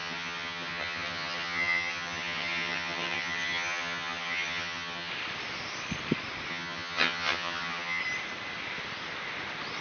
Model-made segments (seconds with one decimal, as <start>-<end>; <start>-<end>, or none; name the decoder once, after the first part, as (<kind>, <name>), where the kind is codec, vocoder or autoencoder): 0.0-5.1 (vocoder, HiFi-GAN); 6.5-8.0